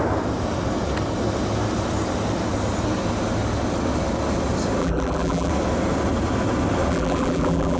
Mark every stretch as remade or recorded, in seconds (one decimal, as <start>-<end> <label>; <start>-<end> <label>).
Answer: 0.0-4.8 recorded; 4.8-5.5 remade; 5.5-6.9 recorded; 6.9-7.8 remade